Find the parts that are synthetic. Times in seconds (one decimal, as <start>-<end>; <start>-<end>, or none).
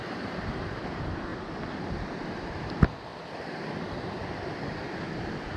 3.1-3.7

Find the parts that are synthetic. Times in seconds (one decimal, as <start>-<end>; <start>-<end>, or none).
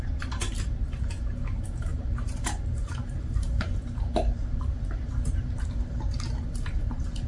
0.0-7.3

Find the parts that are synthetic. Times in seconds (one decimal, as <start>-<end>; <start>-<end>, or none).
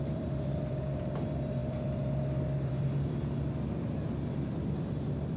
0.0-5.4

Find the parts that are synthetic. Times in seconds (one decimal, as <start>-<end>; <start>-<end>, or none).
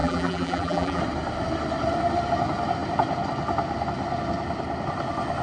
0.0-1.0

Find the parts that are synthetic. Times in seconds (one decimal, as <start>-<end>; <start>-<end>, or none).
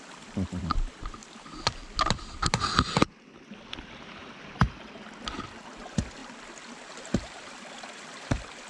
0.0-1.2; 4.4-6.2; 7.0-8.7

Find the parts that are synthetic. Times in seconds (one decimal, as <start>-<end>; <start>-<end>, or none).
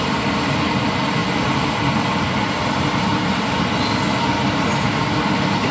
none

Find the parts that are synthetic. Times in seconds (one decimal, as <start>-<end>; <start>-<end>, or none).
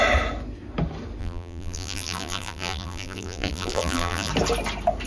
1.2-4.3